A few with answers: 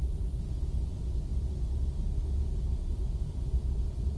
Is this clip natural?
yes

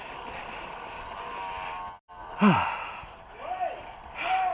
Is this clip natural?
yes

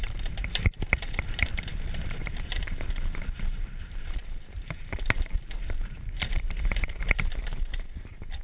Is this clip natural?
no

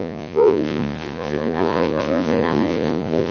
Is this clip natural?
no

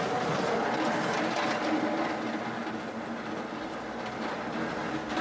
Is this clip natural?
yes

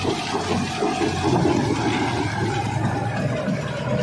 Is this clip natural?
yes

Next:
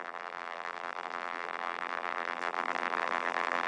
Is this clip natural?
no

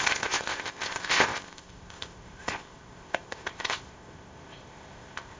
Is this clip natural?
no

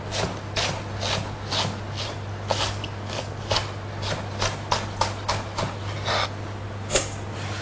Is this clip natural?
yes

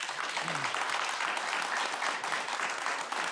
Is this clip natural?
yes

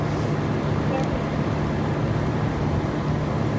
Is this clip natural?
yes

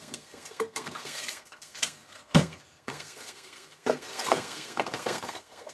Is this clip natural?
no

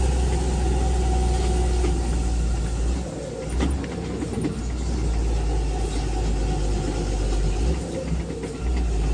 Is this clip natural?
yes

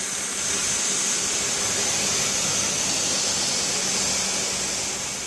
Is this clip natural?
yes